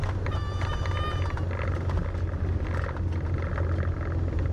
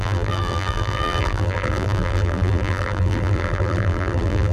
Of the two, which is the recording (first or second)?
first